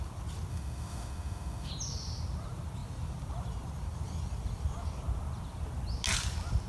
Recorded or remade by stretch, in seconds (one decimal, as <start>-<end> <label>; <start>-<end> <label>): 0.0-0.5 recorded; 0.5-1.7 remade; 1.7-6.7 recorded